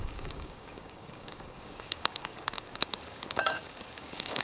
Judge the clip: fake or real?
fake